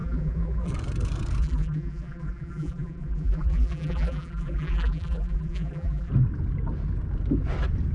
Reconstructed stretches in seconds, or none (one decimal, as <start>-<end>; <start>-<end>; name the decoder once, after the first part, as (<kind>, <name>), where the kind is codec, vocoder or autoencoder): 0.0-0.7 (vocoder, BigVGAN v2); 1.4-6.1